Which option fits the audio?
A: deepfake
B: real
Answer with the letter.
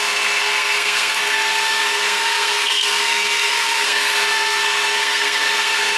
A